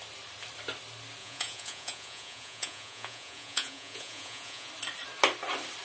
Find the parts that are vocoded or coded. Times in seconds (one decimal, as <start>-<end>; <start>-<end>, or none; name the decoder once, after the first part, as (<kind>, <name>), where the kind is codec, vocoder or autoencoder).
1.2-4.7 (vocoder, Vocos)